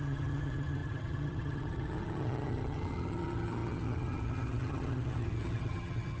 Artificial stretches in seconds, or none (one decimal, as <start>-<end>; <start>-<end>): 0.0-6.2